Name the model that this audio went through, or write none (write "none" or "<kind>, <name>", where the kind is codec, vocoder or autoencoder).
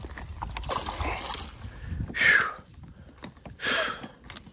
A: none